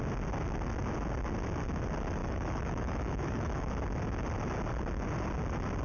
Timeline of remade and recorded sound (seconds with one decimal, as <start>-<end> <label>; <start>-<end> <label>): 0.0-2.2 recorded; 2.2-3.7 remade; 3.7-5.8 recorded